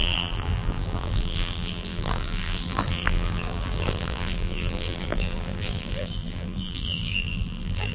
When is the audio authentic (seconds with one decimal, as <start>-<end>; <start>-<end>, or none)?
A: none